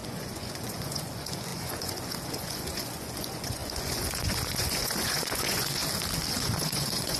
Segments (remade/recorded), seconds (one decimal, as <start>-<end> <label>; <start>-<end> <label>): 0.0-5.8 remade; 5.8-6.3 recorded; 6.3-7.2 remade